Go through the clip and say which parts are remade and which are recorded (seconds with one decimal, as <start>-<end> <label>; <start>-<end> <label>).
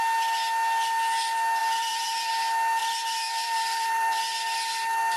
0.0-1.6 recorded; 1.6-2.3 remade; 2.3-2.8 recorded; 2.8-4.2 remade; 4.2-5.2 recorded